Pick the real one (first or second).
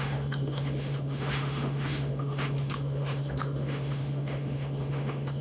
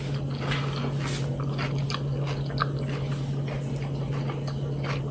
second